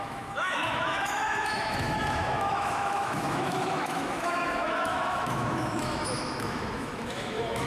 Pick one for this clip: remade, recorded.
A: remade